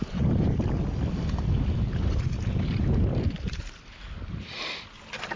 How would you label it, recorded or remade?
recorded